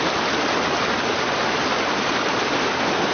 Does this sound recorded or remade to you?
recorded